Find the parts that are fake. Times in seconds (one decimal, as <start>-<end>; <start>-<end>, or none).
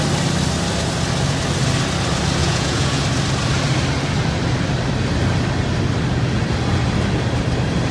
2.4-3.0